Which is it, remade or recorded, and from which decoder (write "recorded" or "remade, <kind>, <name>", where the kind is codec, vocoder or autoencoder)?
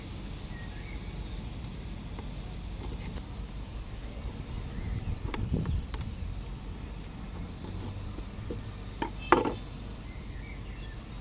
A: recorded